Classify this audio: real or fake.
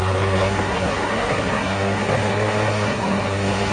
fake